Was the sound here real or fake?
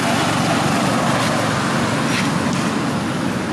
real